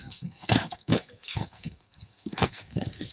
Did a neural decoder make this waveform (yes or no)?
yes